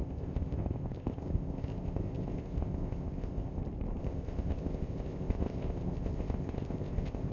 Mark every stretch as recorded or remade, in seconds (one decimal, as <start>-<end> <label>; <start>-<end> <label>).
0.0-3.6 remade; 3.6-4.0 recorded; 4.0-7.3 remade